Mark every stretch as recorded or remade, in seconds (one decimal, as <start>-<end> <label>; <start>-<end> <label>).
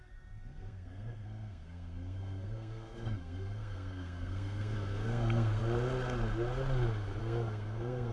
0.0-5.6 remade; 5.6-7.2 recorded; 7.2-8.1 remade